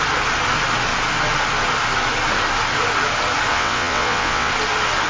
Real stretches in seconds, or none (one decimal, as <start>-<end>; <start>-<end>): 0.0-3.5; 4.5-5.1